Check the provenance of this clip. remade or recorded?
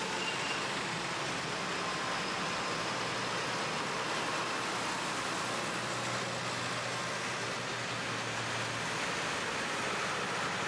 recorded